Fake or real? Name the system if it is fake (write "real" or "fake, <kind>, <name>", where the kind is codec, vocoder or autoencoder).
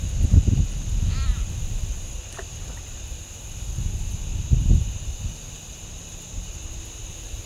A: real